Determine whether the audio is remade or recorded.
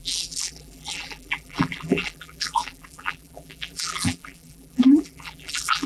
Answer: remade